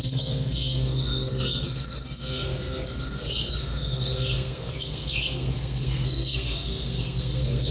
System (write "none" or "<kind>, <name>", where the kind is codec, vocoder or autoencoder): codec, SNAC